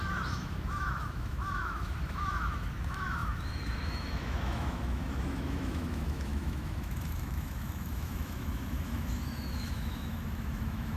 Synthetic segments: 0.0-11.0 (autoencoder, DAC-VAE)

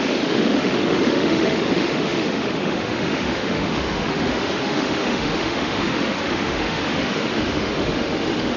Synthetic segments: 0.0-8.6 (autoencoder, DAC-VAE)